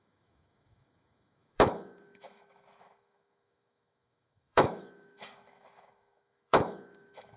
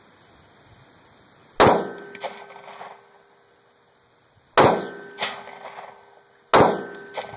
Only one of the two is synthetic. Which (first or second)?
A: first